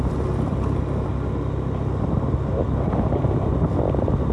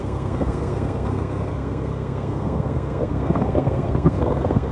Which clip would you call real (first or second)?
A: first